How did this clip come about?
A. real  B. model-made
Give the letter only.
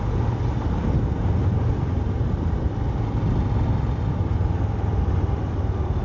A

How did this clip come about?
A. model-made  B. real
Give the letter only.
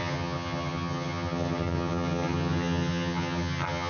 A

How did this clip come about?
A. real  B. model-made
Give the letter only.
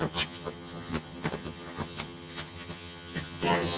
B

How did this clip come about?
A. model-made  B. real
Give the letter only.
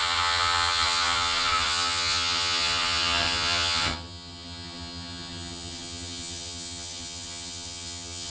A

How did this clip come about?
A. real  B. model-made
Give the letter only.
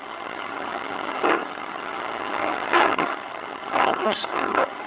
B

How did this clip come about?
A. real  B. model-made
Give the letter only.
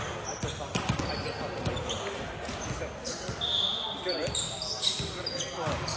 A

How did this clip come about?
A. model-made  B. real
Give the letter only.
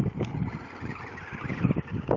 B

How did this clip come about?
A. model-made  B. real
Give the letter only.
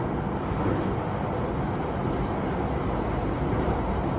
B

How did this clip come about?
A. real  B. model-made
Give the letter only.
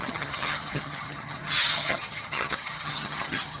B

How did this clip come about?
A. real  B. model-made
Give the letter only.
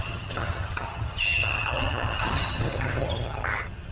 B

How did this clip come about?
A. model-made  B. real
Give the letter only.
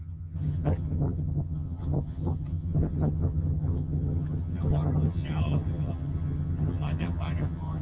A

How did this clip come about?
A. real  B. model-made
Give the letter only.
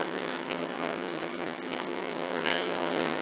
B